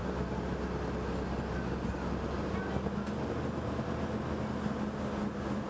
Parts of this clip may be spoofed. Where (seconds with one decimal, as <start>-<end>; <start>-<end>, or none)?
none